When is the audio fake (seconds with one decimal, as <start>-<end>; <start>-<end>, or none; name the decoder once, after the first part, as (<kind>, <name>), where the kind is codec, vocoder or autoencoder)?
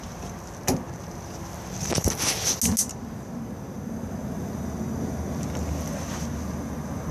none